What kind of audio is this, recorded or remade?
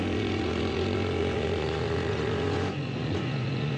remade